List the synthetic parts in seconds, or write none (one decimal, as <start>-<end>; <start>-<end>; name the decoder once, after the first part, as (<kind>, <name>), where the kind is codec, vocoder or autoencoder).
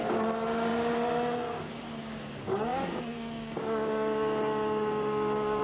0.0-5.6 (codec, DAC)